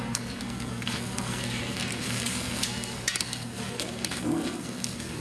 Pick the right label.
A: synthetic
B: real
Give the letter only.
A